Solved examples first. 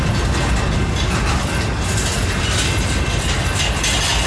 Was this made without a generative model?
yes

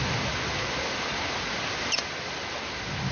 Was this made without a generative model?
yes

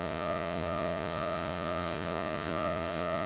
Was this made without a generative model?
no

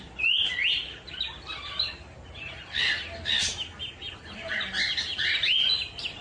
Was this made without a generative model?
yes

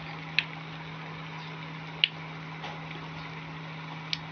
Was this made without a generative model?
yes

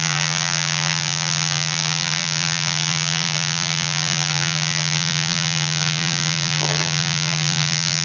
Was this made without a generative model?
no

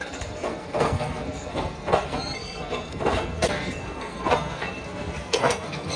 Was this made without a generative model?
no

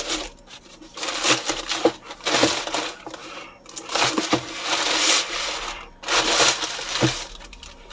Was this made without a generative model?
yes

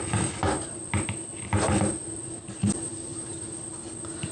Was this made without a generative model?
yes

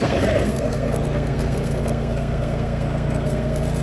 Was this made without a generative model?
no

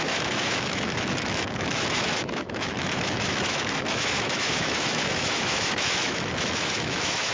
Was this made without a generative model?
no